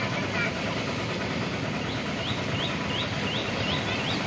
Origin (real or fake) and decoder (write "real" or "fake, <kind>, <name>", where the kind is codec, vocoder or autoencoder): real